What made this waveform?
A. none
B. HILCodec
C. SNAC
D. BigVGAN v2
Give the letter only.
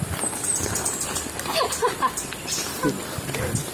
A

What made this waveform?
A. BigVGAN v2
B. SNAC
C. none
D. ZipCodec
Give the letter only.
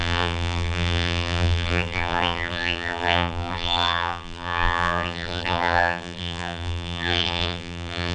A